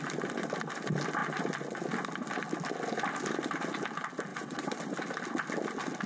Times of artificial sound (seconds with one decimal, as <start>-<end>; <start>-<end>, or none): 4.3-4.8